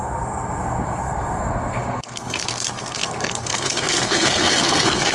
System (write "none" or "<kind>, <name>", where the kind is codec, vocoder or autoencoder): codec, SNAC